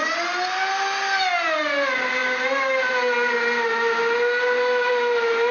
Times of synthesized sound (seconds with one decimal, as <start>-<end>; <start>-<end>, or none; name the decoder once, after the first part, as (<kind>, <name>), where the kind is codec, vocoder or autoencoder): none